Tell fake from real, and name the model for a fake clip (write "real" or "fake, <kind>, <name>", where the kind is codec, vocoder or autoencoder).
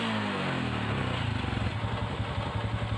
real